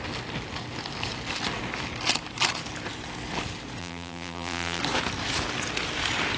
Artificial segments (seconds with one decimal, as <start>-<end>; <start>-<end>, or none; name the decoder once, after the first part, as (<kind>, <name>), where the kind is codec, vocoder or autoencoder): 3.8-4.8 (vocoder, BigVGAN v2)